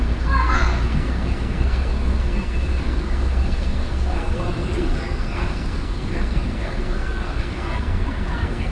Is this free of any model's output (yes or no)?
no